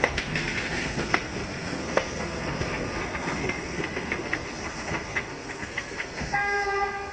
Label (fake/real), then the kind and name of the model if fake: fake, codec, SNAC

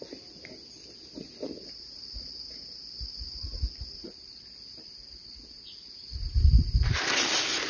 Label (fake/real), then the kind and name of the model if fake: real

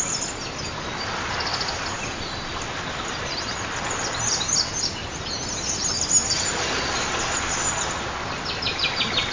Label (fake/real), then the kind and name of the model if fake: real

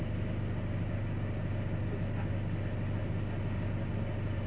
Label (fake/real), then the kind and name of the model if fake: real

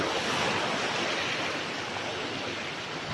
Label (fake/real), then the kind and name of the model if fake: real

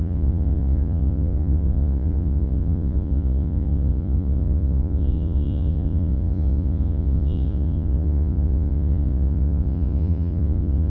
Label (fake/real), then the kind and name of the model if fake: fake, vocoder, Vocos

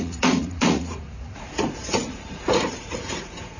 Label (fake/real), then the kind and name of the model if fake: fake, vocoder, Vocos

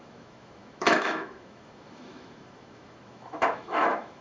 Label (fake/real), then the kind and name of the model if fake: fake, autoencoder, DAC-VAE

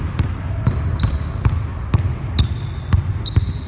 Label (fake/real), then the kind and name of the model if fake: real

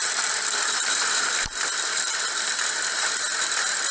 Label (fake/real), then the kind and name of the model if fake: fake, vocoder, BigVGAN v2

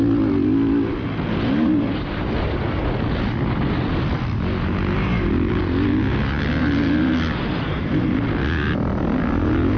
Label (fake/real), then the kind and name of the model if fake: real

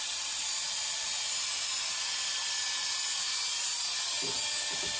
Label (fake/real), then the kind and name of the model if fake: real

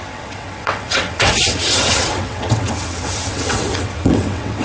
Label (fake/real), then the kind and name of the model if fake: fake, vocoder, WaveNeXt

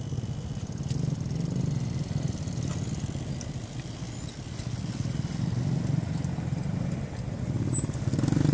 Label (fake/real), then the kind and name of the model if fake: real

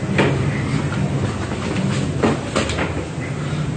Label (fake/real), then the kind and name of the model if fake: real